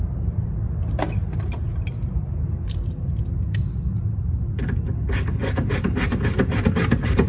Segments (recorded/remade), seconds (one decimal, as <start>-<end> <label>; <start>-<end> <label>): 0.0-5.4 recorded; 5.4-7.3 remade